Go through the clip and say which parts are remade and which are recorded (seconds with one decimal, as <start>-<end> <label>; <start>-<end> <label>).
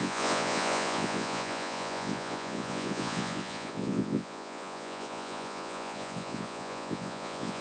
0.0-7.6 remade